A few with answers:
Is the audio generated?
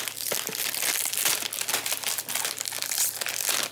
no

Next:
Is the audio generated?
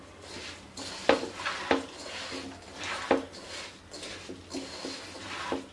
no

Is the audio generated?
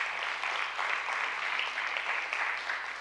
no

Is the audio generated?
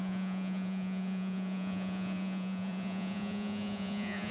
yes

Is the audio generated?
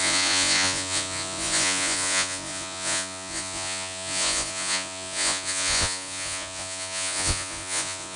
yes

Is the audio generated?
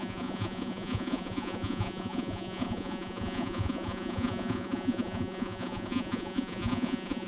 yes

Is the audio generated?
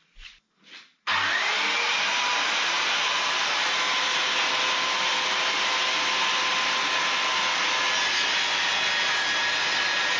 no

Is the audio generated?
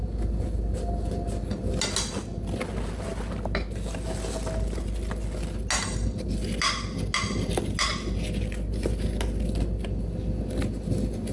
no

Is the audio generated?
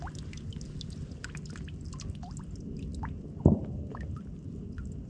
no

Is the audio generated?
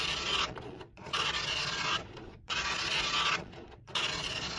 yes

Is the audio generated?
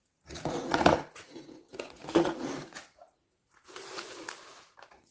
yes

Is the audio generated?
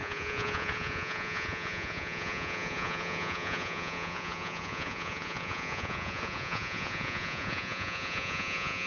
yes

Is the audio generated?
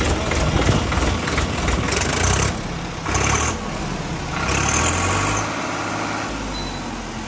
no